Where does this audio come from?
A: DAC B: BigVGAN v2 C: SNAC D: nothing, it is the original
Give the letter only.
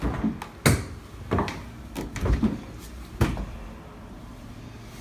D